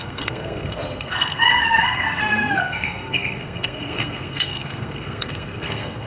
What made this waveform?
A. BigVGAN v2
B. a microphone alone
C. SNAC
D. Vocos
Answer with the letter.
C